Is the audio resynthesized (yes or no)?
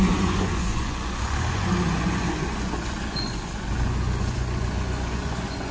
yes